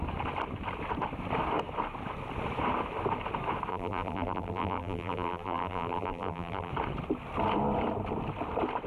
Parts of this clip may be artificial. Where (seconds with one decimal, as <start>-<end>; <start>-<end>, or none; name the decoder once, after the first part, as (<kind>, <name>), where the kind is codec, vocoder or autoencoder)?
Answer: 3.7-6.7 (vocoder, BigVGAN v2)